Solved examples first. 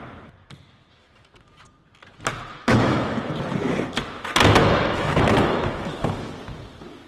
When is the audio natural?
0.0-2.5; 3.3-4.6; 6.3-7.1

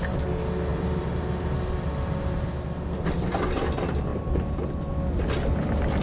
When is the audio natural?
0.0-0.7; 1.9-4.1; 4.8-6.0

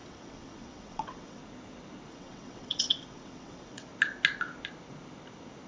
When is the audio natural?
1.4-2.1; 3.9-5.7

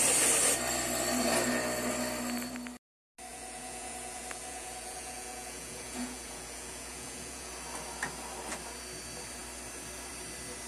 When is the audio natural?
0.0-3.3; 7.5-10.7